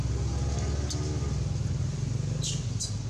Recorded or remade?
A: recorded